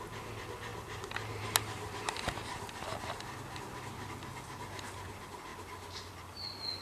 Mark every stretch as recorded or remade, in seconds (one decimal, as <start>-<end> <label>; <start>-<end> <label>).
0.0-6.8 recorded